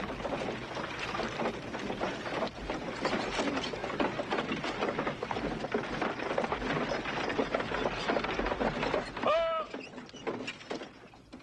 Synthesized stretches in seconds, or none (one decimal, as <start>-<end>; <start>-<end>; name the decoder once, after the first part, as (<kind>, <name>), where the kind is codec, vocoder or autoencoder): none